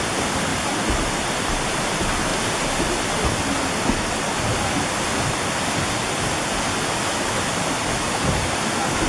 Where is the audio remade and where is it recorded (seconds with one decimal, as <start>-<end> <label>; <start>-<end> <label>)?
0.0-0.5 recorded; 0.5-1.9 remade; 1.9-2.3 recorded; 2.3-3.1 remade; 3.1-9.1 recorded